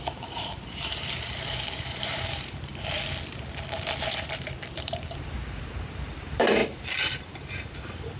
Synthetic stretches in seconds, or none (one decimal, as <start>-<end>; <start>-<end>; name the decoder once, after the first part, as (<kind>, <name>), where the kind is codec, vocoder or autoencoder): 0.0-2.7 (vocoder, BigVGAN v2); 4.0-8.2